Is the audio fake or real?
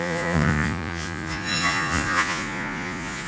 fake